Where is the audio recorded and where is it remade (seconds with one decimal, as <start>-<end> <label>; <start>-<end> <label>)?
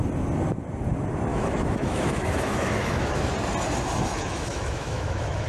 0.0-1.3 recorded; 1.3-3.3 remade; 3.3-4.1 recorded; 4.1-5.5 remade